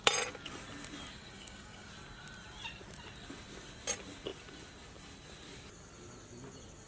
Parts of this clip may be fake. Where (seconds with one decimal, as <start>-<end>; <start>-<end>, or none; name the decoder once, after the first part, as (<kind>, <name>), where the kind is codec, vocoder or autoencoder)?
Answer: 1.2-1.9 (codec, DAC)